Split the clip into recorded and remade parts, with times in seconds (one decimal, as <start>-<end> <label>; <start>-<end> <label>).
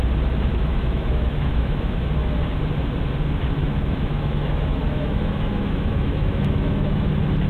0.0-0.5 recorded; 0.5-2.1 remade; 2.1-3.6 recorded; 3.6-7.1 remade; 7.1-7.5 recorded